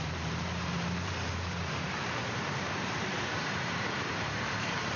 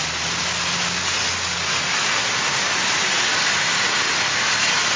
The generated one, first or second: first